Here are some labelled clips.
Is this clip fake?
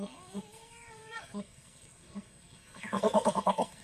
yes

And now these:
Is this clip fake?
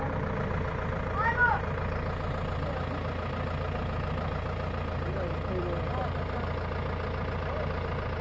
no